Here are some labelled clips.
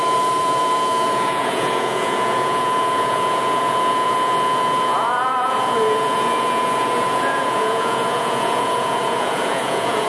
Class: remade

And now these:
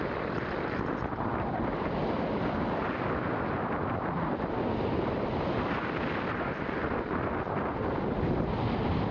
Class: recorded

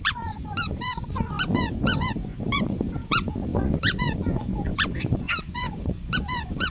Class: remade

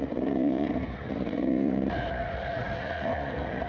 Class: remade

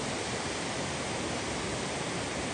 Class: recorded